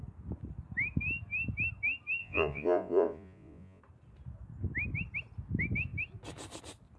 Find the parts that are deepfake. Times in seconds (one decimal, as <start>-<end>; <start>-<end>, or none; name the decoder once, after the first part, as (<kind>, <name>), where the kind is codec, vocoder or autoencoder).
2.2-3.8 (vocoder, Vocos)